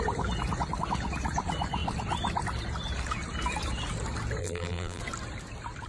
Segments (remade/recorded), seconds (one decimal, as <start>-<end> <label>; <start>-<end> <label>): 0.0-4.4 recorded; 4.4-5.0 remade; 5.0-5.9 recorded